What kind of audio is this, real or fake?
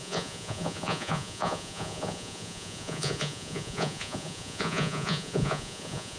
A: fake